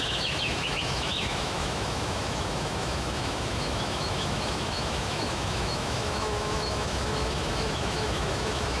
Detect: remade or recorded remade